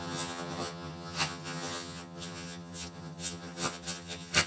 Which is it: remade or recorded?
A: remade